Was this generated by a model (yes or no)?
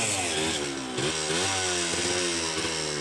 no